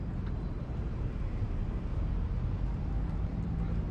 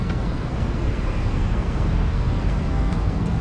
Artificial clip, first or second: second